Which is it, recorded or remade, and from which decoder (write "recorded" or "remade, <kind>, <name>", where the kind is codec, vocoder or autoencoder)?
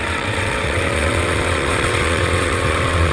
remade, vocoder, WaveNeXt